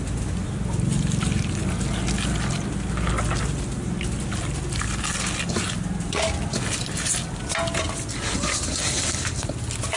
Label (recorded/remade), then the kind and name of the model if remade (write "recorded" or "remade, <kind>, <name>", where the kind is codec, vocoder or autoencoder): recorded